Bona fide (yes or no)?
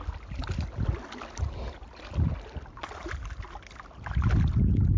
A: yes